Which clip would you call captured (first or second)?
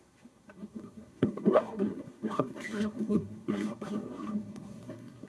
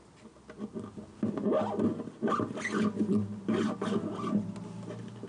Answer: second